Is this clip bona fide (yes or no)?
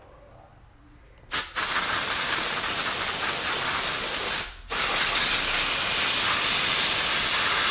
yes